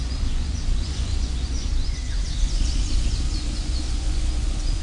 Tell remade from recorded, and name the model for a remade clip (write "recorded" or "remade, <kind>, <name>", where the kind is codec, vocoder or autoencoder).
remade, vocoder, Vocos